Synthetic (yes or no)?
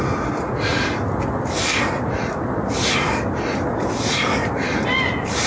no